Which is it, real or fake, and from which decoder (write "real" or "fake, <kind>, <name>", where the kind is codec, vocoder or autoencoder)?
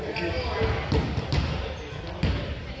real